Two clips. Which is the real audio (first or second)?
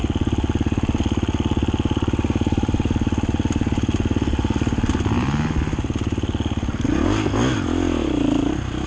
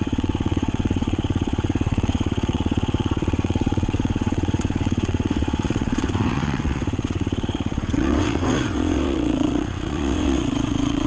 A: first